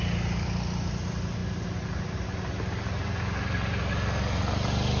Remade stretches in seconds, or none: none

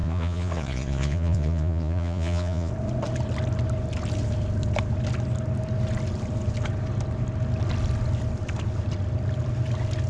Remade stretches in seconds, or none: 0.0-2.7 (vocoder, Vocos)